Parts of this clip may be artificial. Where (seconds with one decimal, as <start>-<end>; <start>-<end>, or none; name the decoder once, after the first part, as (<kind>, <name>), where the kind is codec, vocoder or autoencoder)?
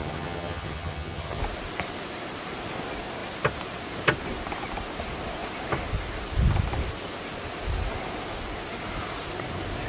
0.0-1.4 (vocoder, HiFi-GAN)